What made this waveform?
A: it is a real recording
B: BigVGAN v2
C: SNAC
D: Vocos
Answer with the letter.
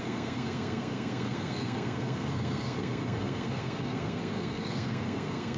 C